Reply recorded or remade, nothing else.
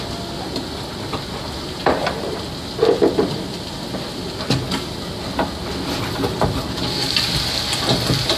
recorded